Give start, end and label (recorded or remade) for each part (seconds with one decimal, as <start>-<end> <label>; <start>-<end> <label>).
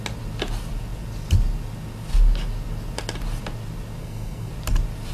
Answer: 0.0-4.0 recorded; 4.0-4.5 remade; 4.5-5.1 recorded